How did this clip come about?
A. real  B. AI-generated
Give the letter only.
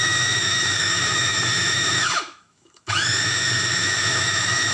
B